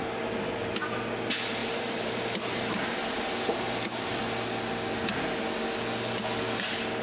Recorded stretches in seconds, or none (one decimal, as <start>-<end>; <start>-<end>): 0.0-1.6; 4.2-7.0